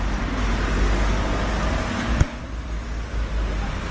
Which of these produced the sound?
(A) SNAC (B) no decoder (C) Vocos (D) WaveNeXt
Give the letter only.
B